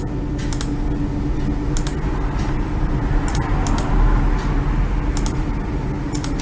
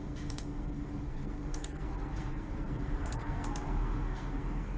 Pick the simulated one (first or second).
second